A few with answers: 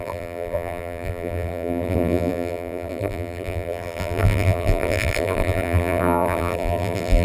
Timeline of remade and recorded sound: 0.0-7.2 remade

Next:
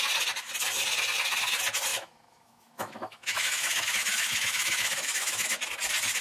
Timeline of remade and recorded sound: 0.0-1.9 recorded; 1.9-5.6 remade; 5.6-6.2 recorded